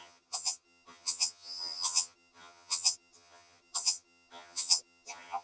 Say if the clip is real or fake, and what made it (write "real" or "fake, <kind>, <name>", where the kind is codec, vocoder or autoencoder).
fake, vocoder, HiFi-GAN